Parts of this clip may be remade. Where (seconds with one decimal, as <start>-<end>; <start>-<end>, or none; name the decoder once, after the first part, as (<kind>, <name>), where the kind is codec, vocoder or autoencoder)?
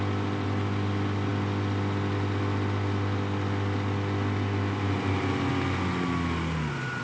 none